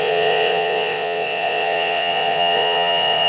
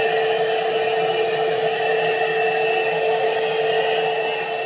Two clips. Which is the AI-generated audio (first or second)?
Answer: first